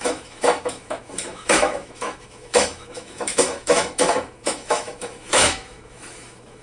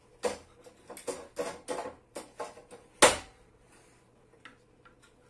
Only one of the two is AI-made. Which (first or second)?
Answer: first